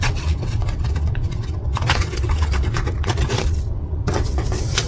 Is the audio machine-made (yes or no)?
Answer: yes